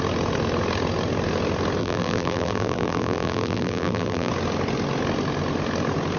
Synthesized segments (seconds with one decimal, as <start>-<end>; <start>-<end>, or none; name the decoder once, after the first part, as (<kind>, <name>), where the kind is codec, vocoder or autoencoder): 1.8-4.3 (vocoder, BigVGAN v2)